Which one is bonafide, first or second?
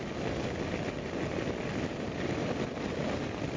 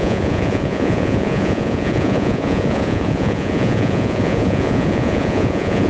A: first